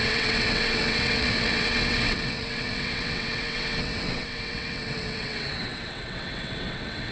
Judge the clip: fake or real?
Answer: fake